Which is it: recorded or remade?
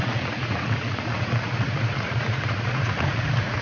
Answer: remade